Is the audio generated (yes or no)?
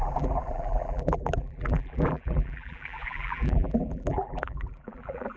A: yes